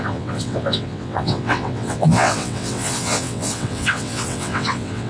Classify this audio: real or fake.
fake